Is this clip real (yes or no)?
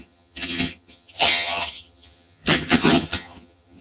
no